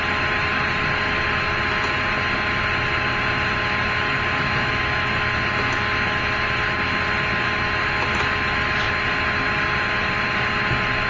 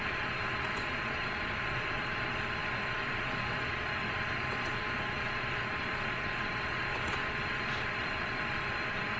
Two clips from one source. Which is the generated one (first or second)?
second